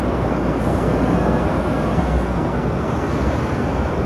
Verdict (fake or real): fake